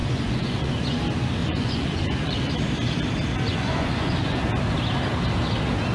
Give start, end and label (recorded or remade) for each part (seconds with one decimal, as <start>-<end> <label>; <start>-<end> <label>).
0.0-1.0 remade; 1.0-1.4 recorded; 1.4-2.6 remade; 2.6-3.5 recorded; 3.5-4.4 remade; 4.4-5.9 recorded